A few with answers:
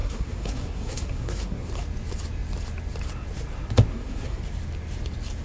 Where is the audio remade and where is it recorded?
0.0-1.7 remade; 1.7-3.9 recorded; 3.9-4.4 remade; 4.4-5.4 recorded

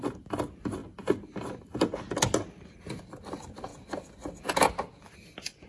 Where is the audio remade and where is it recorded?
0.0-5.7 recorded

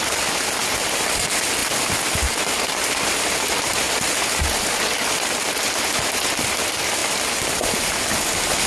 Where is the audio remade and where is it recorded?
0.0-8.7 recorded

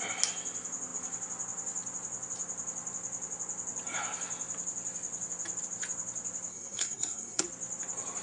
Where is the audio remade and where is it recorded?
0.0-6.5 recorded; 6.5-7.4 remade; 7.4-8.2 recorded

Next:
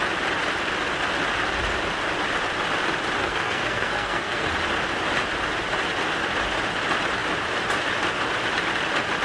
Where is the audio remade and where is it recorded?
0.0-3.2 recorded; 3.2-4.5 remade; 4.5-9.2 recorded